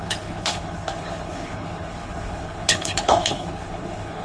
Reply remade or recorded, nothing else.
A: remade